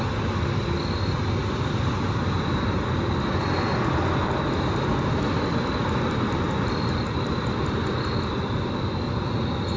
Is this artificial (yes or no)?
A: no